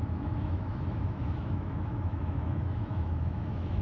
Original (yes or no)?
no